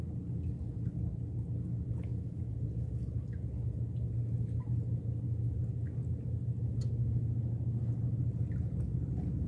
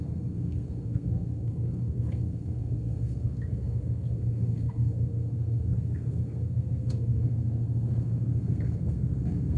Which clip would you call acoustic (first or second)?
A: first